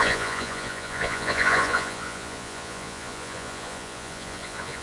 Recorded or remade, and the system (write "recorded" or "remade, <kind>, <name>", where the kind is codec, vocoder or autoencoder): remade, vocoder, Vocos